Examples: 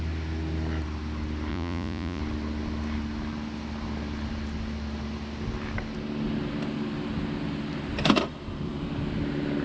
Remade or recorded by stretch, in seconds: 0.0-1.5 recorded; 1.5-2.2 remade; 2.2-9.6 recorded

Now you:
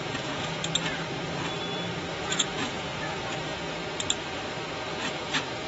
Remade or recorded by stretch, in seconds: 0.0-0.6 remade; 0.6-2.2 recorded; 2.2-3.8 remade; 3.8-5.0 recorded; 5.0-5.7 remade

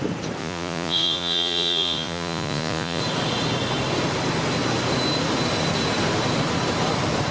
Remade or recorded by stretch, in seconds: 0.0-0.4 recorded; 0.4-3.0 remade; 3.0-7.3 recorded

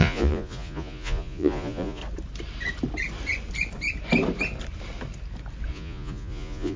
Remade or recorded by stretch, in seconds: 0.0-2.0 remade; 2.0-5.7 recorded; 5.7-6.8 remade

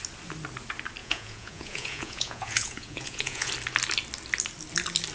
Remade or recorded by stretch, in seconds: 0.0-1.0 recorded; 1.0-3.5 remade; 3.5-5.1 recorded

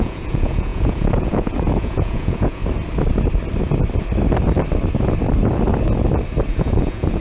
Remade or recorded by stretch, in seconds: 0.0-2.6 remade; 2.6-6.5 recorded; 6.5-7.2 remade